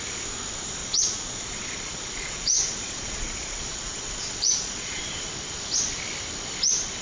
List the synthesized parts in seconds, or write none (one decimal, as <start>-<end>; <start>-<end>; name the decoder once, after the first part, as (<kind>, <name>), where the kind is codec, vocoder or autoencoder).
0.8-5.0 (vocoder, Vocos)